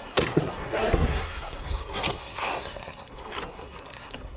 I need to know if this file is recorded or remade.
remade